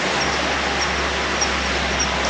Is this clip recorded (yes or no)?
yes